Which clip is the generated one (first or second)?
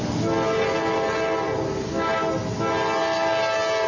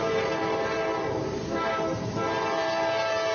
second